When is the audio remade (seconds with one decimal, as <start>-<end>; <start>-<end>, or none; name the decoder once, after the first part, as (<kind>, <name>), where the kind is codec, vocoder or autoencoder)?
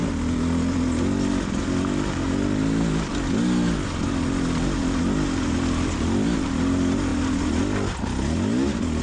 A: none